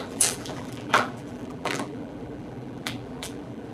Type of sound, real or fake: fake